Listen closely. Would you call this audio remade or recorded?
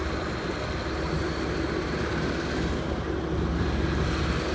recorded